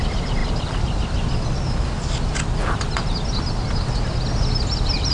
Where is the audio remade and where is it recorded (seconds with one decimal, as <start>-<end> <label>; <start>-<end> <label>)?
0.0-5.1 recorded